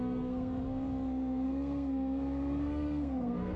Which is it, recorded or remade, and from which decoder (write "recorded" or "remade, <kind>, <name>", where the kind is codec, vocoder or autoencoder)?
remade, codec, SNAC